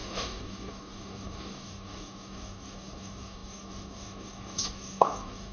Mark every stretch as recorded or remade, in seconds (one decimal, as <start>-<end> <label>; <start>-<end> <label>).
0.0-5.5 remade